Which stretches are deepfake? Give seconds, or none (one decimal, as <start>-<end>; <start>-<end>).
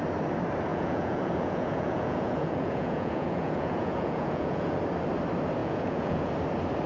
0.7-4.8; 5.6-6.3